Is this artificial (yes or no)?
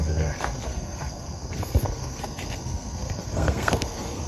yes